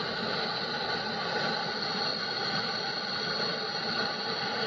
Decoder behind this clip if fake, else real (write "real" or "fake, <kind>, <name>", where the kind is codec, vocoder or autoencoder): real